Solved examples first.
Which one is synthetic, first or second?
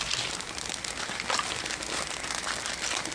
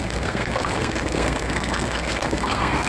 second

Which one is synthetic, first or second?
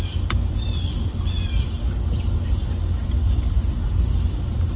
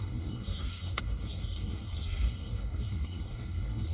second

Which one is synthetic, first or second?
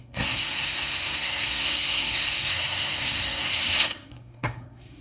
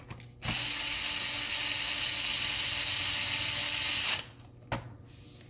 first